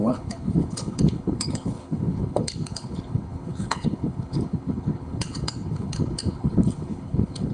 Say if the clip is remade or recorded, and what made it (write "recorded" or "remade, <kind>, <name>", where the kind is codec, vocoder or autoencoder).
remade, codec, HILCodec